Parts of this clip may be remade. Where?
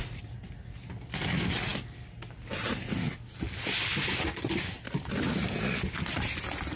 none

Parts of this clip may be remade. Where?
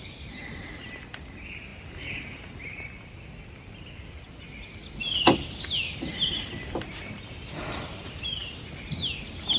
none